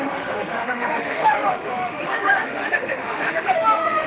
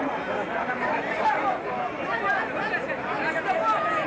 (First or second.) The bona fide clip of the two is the second